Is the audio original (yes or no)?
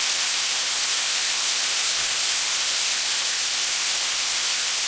no